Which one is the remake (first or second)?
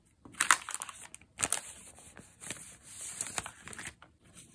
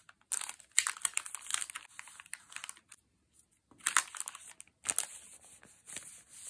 first